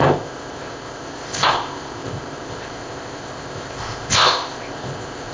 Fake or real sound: fake